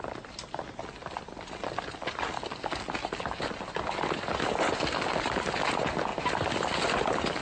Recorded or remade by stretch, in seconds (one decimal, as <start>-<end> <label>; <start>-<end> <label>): 0.0-7.4 recorded